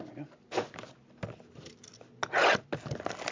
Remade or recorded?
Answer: recorded